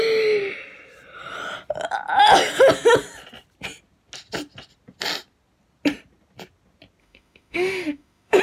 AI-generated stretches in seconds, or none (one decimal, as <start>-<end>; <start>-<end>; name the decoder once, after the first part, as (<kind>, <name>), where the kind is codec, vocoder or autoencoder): 7.0-8.4 (autoencoder, DAC-VAE)